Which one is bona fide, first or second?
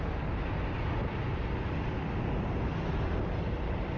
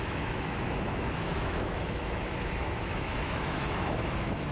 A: first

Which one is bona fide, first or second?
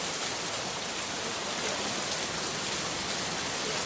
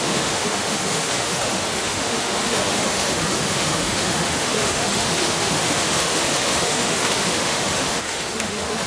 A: first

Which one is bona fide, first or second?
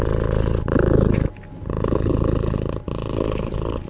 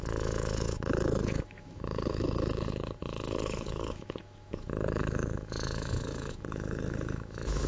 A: first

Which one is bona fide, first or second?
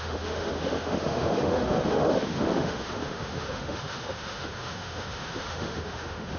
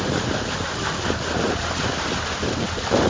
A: second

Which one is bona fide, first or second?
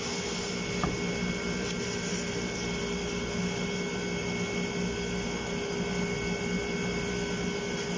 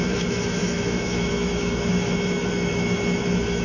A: first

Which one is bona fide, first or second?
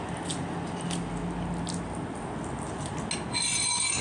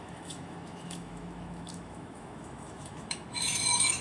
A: first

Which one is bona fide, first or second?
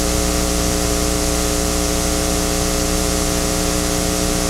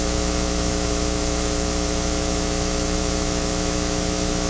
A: first